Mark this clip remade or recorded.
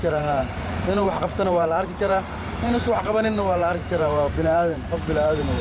remade